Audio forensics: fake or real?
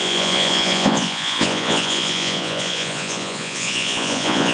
fake